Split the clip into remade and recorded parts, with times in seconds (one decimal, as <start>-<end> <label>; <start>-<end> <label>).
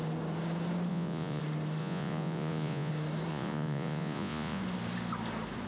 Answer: 0.0-0.9 recorded; 0.9-1.4 remade; 1.4-1.8 recorded; 1.8-2.9 remade; 2.9-3.3 recorded; 3.3-4.6 remade; 4.6-5.7 recorded